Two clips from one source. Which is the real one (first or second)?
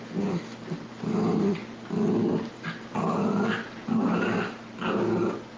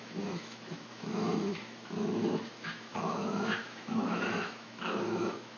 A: first